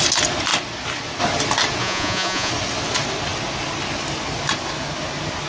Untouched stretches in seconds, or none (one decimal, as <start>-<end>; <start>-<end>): 0.0-1.8; 2.5-5.5